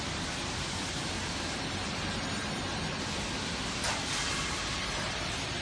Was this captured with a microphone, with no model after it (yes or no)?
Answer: yes